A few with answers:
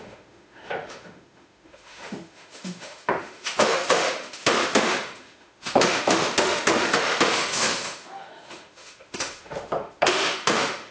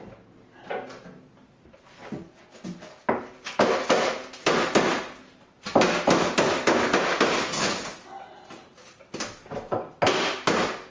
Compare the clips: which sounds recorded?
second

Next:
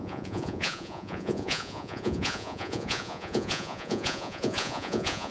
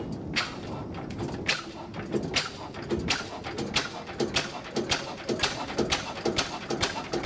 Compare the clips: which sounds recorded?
second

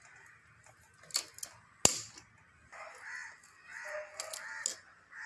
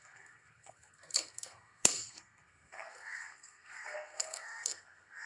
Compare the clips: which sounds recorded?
first